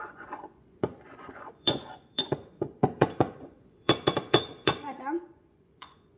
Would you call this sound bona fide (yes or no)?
no